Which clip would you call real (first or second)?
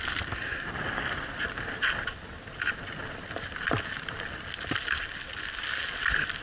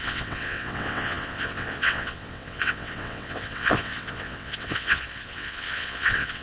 first